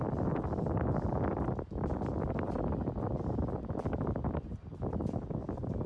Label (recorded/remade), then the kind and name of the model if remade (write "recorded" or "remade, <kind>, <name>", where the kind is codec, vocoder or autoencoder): recorded